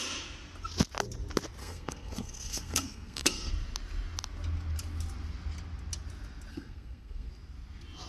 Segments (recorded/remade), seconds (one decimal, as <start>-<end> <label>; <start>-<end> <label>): 0.0-1.6 recorded; 1.6-3.5 remade; 3.5-6.5 recorded; 6.5-7.3 remade; 7.3-8.1 recorded